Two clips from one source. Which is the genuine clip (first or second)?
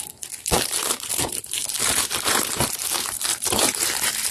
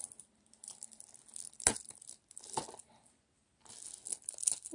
second